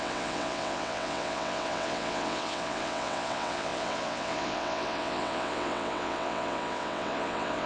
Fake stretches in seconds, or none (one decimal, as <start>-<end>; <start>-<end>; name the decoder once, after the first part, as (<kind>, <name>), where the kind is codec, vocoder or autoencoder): 0.0-7.7 (vocoder, WaveNeXt)